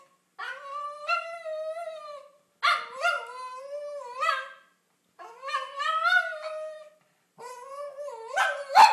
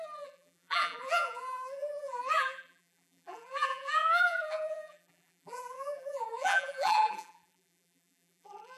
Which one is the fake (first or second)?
second